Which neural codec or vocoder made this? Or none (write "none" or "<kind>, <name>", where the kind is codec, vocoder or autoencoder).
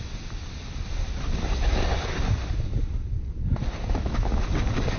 none